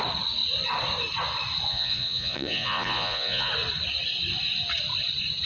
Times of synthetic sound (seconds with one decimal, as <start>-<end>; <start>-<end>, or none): 1.7-3.5